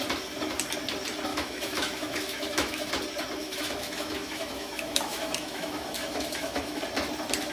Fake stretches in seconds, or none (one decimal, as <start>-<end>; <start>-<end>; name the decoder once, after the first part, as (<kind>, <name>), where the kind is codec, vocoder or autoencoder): 1.3-2.9 (autoencoder, DAC-VAE); 3.4-6.8